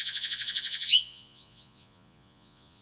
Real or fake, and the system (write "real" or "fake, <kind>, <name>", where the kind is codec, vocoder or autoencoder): fake, vocoder, Vocos